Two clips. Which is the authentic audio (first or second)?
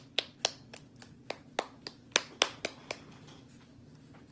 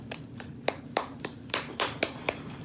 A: first